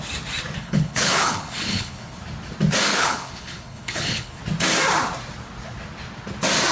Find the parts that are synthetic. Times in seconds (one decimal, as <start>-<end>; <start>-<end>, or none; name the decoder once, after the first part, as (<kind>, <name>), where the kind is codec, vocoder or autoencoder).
0.6-2.2 (codec, HILCodec); 2.9-4.4